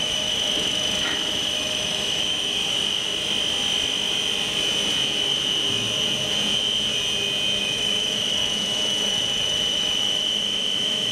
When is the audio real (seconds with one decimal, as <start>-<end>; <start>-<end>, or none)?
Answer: 2.6-7.6